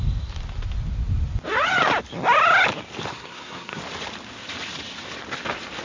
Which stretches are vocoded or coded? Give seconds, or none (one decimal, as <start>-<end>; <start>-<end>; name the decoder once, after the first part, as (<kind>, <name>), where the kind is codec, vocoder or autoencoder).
3.1-3.8 (codec, SNAC)

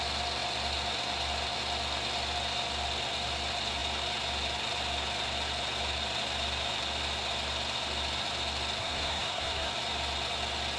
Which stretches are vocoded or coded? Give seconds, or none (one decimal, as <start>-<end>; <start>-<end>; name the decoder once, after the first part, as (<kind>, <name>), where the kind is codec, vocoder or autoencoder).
8.8-9.7 (codec, SNAC)

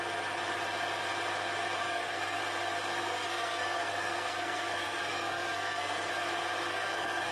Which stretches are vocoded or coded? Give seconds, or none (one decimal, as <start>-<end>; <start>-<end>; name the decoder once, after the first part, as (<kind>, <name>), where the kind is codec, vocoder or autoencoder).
1.8-2.4 (codec, SNAC); 3.0-6.1; 6.7-7.3

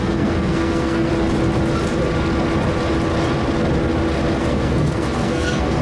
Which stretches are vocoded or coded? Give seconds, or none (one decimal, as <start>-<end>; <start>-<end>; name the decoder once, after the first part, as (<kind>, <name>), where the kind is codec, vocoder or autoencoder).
0.0-1.1 (codec, SNAC); 4.4-5.8